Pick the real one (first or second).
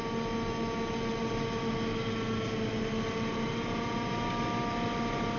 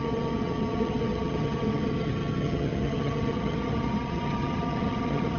first